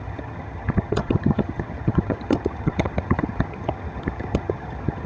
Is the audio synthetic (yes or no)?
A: yes